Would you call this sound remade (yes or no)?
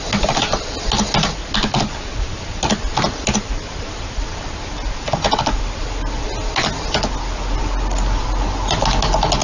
no